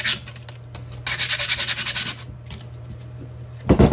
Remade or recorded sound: recorded